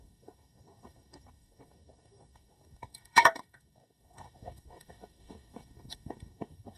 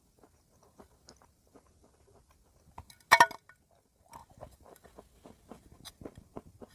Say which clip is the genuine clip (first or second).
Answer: second